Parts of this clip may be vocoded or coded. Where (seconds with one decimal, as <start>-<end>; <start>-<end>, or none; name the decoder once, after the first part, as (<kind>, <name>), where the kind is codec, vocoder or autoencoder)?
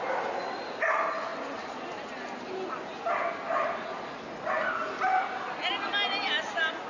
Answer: 1.3-2.4 (vocoder, BigVGAN v2); 2.9-3.6